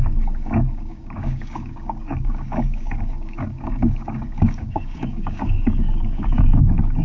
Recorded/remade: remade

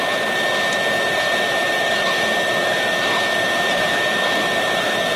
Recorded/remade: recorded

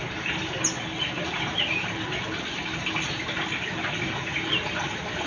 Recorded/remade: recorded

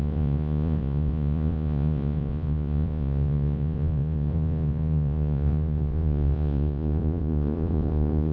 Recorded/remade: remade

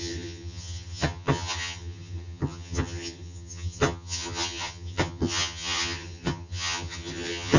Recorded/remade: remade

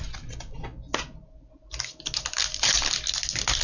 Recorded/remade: recorded